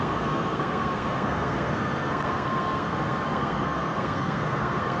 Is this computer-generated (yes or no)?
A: yes